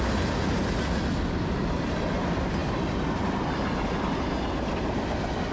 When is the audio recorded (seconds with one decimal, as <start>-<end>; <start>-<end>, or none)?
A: 0.0-5.5